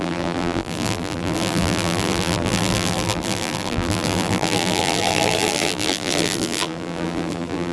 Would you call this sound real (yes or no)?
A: no